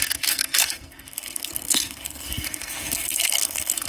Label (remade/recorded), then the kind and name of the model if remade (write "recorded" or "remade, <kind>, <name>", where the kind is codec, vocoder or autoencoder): remade, codec, SNAC